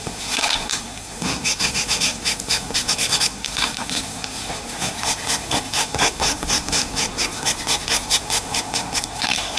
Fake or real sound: fake